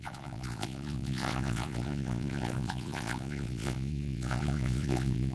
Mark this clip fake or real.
fake